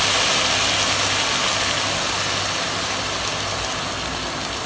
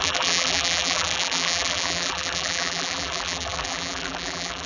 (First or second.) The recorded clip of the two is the first